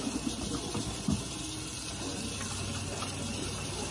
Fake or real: real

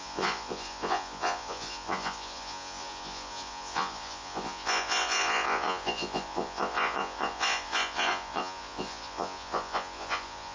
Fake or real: fake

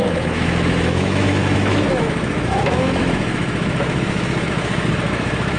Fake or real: fake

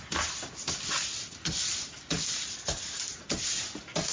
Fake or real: real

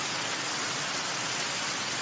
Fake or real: real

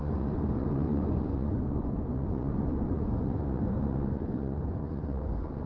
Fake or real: fake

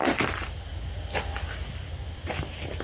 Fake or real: real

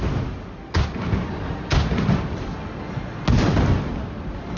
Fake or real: real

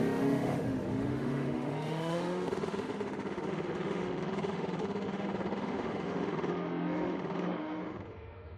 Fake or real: fake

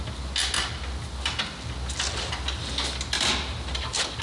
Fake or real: real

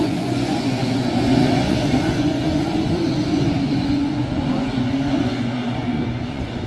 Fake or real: fake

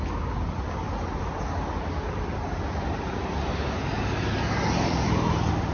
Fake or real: real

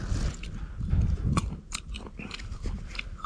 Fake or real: real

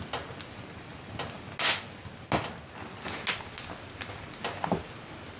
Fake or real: real